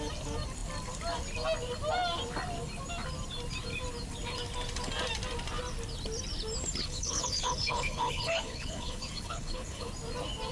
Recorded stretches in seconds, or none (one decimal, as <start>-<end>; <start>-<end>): 0.0-6.8; 9.9-10.5